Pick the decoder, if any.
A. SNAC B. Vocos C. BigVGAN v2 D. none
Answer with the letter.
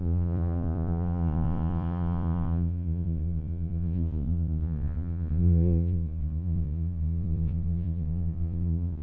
B